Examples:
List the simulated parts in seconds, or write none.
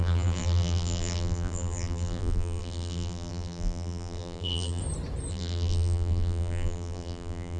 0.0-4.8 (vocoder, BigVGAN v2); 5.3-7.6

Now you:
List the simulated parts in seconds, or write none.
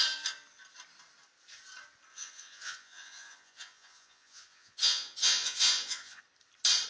2.1-6.2 (vocoder, Vocos)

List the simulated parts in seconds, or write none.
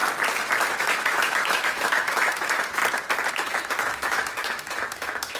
0.8-2.8 (autoencoder, DAC-VAE); 3.3-5.4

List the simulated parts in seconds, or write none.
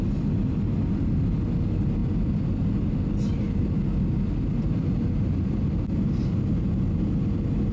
none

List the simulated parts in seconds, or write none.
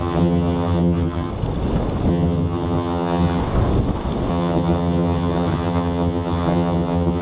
0.0-1.3 (vocoder, HiFi-GAN); 2.1-3.4; 4.3-7.2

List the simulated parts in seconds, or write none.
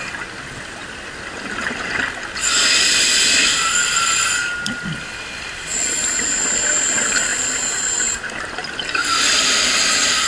none